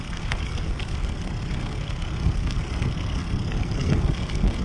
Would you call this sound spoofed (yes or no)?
yes